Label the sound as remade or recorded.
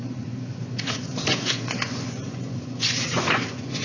remade